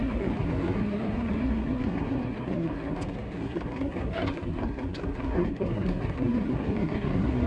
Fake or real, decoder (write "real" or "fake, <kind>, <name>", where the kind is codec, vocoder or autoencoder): fake, codec, SNAC